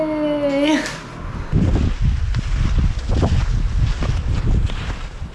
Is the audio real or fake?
real